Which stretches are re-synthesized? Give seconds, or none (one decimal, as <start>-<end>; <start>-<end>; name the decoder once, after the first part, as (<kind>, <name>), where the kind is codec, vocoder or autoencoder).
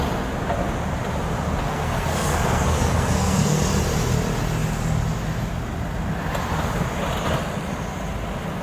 1.6-3.6 (codec, SNAC)